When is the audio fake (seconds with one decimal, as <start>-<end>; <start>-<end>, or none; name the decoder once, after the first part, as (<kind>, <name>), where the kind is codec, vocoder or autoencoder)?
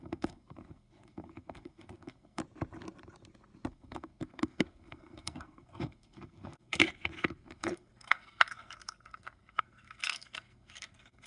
0.0-2.4 (codec, SNAC); 3.7-11.3